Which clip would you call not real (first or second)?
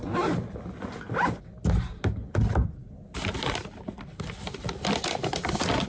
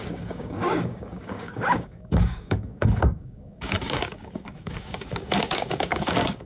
second